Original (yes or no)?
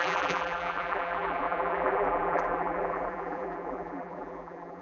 no